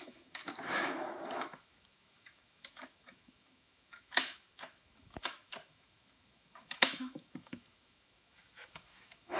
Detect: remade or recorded remade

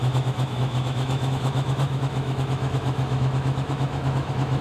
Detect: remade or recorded remade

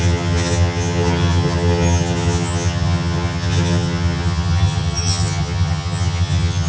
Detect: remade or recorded remade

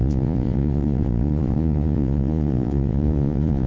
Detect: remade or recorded remade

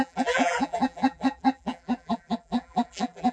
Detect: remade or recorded remade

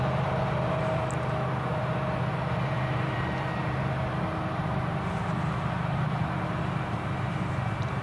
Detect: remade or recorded remade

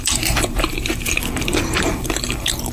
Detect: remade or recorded remade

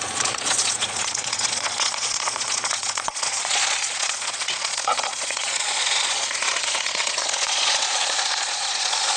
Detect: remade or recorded remade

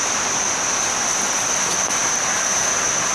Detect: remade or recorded recorded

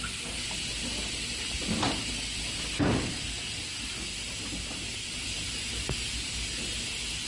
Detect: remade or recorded recorded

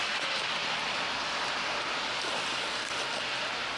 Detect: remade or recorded recorded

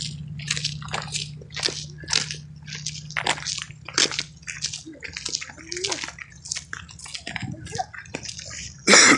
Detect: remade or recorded recorded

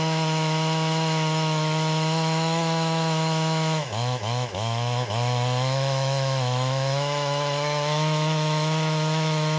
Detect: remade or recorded remade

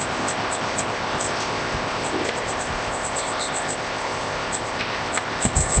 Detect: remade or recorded remade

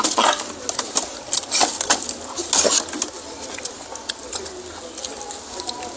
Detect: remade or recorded recorded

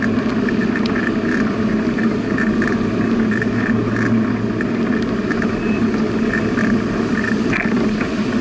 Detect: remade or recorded recorded